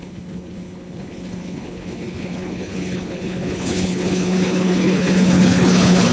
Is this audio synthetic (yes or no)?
yes